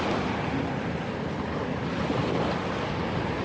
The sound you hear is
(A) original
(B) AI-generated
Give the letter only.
A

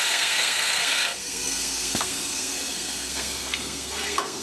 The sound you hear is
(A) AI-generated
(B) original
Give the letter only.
A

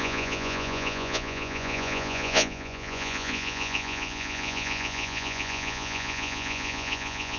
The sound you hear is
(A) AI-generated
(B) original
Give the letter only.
A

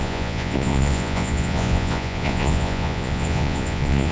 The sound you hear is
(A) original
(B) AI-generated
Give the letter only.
B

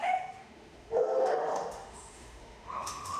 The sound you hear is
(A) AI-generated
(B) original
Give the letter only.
A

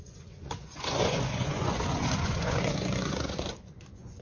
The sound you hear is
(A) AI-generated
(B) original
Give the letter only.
A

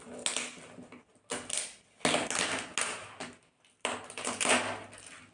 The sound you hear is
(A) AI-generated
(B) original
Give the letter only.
B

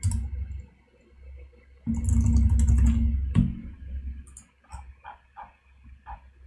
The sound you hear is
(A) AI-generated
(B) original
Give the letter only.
B